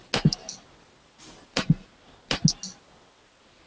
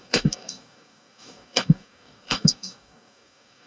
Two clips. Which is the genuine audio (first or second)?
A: first